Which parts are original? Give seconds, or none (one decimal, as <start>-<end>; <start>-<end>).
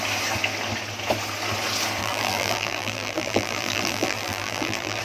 0.0-2.0